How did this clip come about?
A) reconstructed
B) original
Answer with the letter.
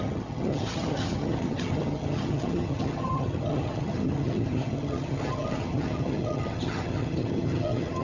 A